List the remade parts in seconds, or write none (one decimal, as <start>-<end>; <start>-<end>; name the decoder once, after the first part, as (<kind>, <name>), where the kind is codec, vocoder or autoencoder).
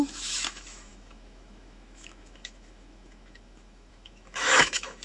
0.0-5.0 (autoencoder, DAC-VAE)